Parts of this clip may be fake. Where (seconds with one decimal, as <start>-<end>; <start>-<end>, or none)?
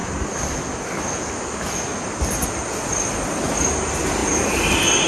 none